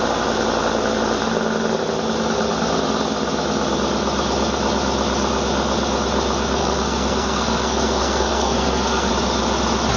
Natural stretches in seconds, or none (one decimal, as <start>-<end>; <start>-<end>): 0.0-6.6; 9.1-10.0